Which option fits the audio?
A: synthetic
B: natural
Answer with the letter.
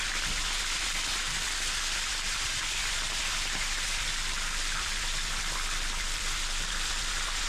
A